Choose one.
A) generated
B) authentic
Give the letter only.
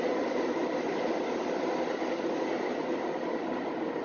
B